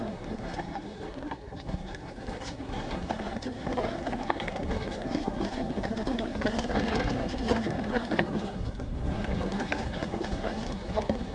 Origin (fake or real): fake